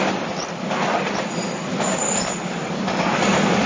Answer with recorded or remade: recorded